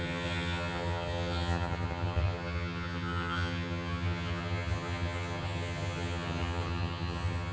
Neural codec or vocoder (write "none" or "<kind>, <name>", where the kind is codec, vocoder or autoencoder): vocoder, HiFi-GAN